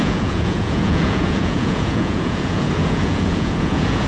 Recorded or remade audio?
remade